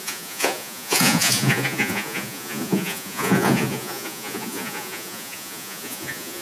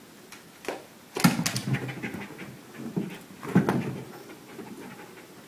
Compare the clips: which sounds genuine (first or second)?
second